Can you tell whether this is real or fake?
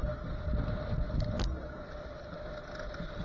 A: real